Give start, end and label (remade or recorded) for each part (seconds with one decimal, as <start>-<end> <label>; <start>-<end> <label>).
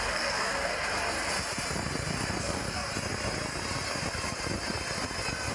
0.0-0.7 remade; 0.7-2.4 recorded; 2.4-2.9 remade; 2.9-5.5 recorded